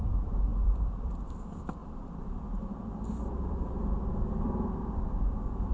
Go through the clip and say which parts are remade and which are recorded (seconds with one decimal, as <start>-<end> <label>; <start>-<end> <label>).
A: 0.0-0.5 recorded; 0.5-1.1 remade; 1.1-1.8 recorded; 1.8-5.2 remade; 5.2-5.7 recorded